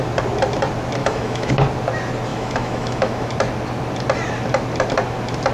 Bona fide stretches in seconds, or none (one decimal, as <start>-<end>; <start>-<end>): 0.0-1.0; 1.5-2.3; 3.3-5.5